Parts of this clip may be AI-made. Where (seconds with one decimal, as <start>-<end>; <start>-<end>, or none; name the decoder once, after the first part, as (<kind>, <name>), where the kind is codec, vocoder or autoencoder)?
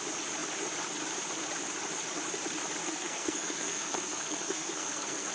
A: 2.8-5.3 (codec, SNAC)